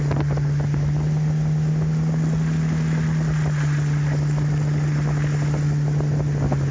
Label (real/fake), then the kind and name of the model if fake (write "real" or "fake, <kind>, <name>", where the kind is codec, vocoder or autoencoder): real